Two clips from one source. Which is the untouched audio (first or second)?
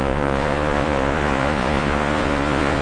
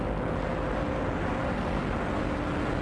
second